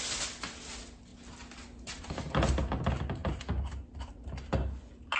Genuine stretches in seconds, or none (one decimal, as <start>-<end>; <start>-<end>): 0.0-5.2